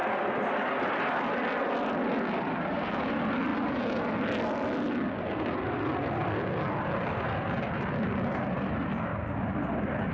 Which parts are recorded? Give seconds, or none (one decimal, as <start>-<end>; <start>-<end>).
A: 0.0-10.1